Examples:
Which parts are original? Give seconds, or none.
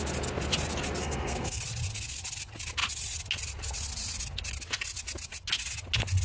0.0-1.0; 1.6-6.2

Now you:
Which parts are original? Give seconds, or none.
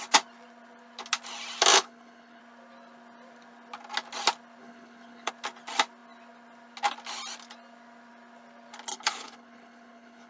0.0-1.7; 2.4-4.6; 5.3-8.9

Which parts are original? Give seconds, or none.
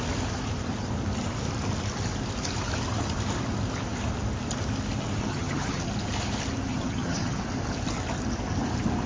0.0-5.3; 5.9-6.7; 7.4-9.1